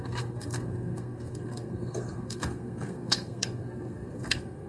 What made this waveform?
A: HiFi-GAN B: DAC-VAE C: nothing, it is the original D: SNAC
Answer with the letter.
D